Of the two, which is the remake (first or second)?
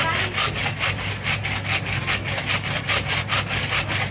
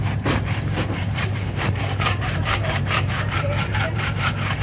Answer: second